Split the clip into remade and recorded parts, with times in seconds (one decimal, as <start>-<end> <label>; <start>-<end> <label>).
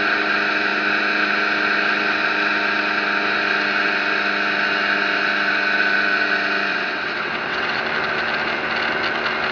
0.0-6.7 recorded; 6.7-7.8 remade; 7.8-9.5 recorded